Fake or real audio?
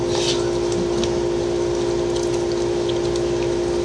real